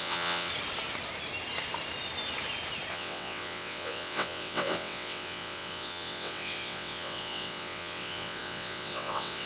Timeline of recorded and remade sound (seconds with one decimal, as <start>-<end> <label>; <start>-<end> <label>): 0.0-0.5 remade; 0.5-2.9 recorded; 2.9-9.5 remade